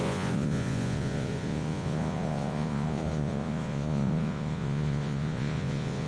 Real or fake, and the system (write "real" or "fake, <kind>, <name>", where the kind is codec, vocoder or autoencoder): fake, vocoder, Vocos